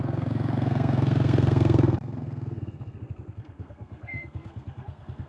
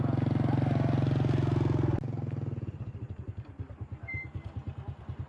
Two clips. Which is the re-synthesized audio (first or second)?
first